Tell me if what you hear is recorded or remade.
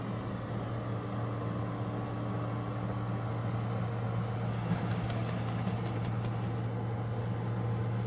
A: recorded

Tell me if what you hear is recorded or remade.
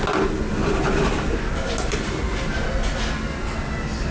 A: recorded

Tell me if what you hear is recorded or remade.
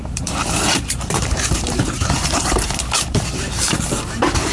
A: remade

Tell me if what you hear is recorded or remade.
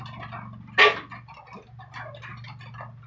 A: recorded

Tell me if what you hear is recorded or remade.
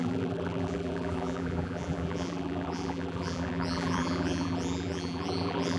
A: remade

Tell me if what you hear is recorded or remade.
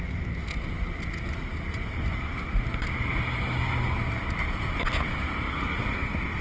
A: recorded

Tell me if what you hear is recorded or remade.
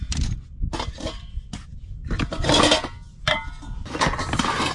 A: recorded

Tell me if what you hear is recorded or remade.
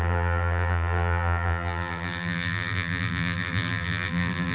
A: remade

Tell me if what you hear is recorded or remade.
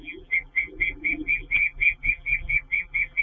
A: remade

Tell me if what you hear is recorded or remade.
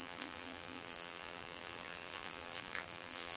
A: remade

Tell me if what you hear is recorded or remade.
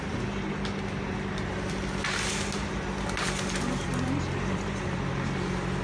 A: recorded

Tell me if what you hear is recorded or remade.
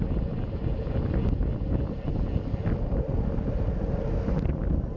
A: recorded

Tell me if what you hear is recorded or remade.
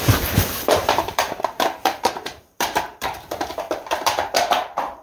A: remade